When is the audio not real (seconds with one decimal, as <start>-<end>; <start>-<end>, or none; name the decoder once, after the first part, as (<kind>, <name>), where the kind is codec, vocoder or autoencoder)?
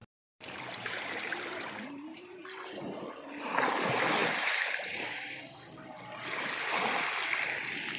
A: 0.0-3.1 (vocoder, BigVGAN v2); 4.2-6.7